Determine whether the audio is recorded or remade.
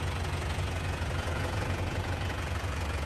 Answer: remade